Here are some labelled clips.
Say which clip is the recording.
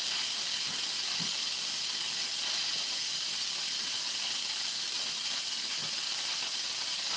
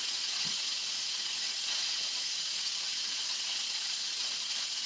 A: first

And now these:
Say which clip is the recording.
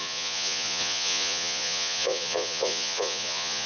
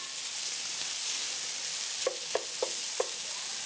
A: second